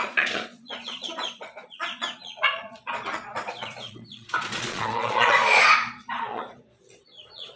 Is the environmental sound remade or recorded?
remade